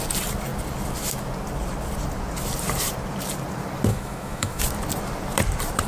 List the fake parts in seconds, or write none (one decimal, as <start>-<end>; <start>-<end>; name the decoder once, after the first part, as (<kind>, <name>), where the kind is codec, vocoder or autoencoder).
3.9-4.6 (autoencoder, DAC-VAE)